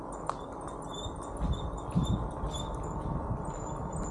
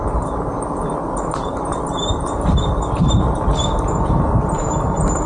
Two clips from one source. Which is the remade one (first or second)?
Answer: second